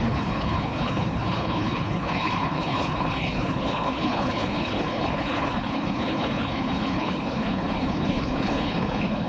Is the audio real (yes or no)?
no